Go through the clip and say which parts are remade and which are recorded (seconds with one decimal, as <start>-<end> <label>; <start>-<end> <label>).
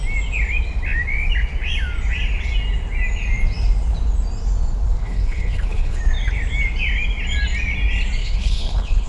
0.0-5.0 recorded; 5.0-6.0 remade; 6.0-8.2 recorded; 8.2-9.1 remade